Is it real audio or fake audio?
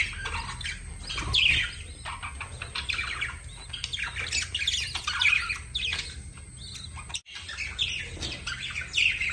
real